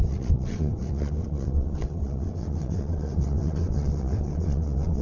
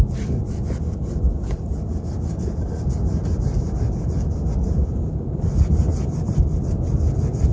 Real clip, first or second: second